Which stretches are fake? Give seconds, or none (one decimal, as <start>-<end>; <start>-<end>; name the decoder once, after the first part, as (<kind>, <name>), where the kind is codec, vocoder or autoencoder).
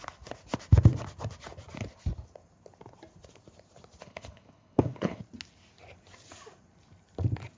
4.0-5.2 (codec, HILCodec)